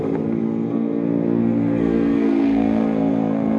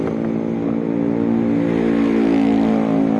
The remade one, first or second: first